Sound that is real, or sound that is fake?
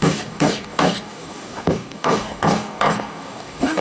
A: fake